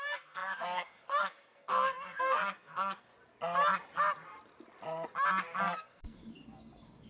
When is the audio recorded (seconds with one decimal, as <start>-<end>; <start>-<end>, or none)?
3.1-5.6